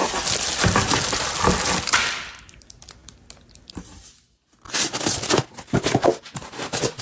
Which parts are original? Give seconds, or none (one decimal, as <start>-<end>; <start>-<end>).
0.0-7.0